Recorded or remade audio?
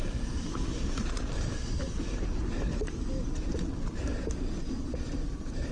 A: remade